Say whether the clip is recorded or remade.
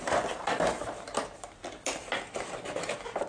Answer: remade